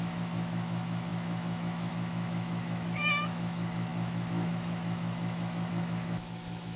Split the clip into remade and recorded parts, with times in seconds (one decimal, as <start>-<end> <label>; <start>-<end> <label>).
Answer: 0.0-6.8 remade